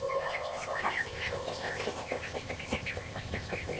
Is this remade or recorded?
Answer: remade